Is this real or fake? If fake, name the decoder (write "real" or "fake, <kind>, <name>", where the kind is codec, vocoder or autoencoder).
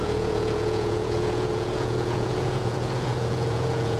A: fake, vocoder, Vocos